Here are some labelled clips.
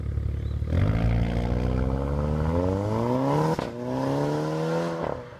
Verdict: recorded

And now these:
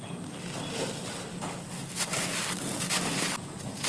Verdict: recorded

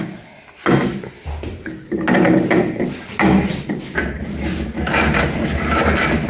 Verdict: recorded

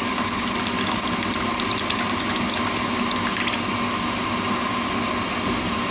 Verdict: recorded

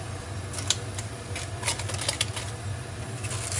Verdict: recorded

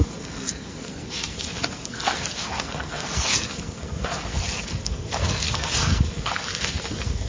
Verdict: remade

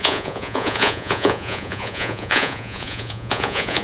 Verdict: remade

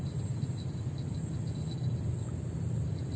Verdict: recorded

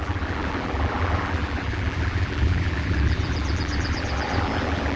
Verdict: remade